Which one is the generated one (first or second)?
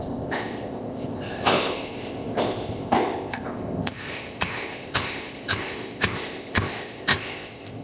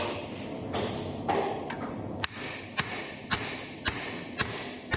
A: first